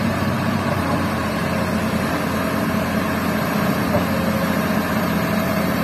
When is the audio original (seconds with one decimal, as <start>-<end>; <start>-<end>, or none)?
1.4-4.9